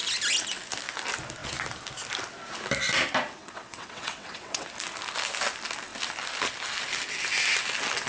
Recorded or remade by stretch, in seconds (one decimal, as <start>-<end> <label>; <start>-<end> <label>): 0.0-3.4 recorded; 3.4-4.7 remade; 4.7-8.1 recorded